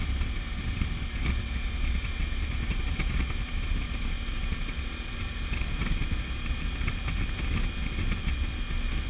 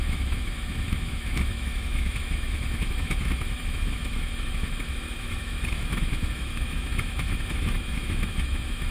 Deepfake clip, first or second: second